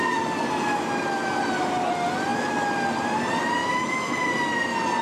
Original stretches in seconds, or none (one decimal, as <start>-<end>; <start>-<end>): 0.0-3.6; 4.3-5.0